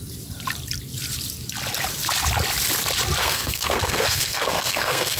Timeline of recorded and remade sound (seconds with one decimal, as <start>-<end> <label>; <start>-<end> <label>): 0.0-3.2 recorded; 3.2-5.2 remade